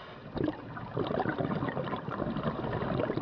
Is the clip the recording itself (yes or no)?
yes